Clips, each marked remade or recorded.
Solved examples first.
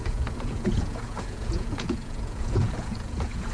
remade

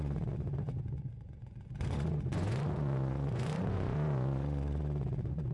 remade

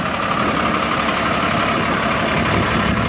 recorded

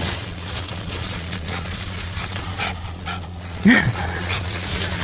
remade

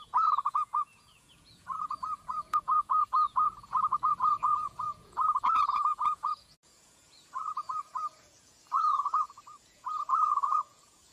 remade